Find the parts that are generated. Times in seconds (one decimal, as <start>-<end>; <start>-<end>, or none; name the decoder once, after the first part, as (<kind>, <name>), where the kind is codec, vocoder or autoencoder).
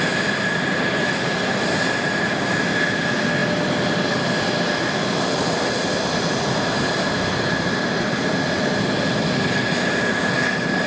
none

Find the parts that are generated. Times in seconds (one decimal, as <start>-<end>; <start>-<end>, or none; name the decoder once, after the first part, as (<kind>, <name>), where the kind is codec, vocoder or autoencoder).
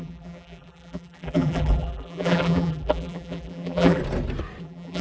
0.0-4.0 (vocoder, BigVGAN v2); 4.6-5.0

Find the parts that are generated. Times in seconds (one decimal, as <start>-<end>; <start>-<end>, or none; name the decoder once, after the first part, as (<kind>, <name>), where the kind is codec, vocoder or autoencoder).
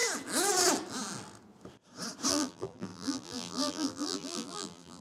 2.3-5.0 (vocoder, BigVGAN v2)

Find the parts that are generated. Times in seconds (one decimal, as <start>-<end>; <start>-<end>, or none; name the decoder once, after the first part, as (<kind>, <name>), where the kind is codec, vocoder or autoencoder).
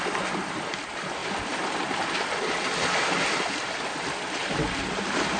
0.0-5.4 (vocoder, BigVGAN v2)